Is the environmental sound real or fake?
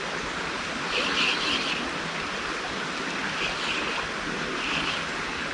real